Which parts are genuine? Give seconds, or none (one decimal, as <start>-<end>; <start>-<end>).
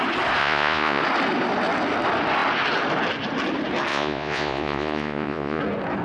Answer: 0.0-0.4; 1.0-3.9; 5.6-6.0